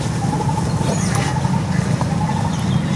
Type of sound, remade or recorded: recorded